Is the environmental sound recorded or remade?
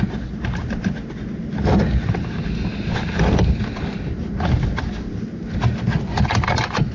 recorded